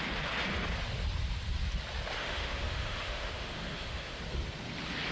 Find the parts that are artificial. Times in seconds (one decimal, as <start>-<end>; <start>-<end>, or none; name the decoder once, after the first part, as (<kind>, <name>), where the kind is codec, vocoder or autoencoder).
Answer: 2.2-4.2 (autoencoder, DAC-VAE)